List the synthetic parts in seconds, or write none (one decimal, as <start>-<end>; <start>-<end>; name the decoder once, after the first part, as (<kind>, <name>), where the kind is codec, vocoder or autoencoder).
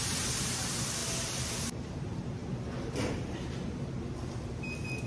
0.0-1.0 (vocoder, BigVGAN v2); 1.6-2.4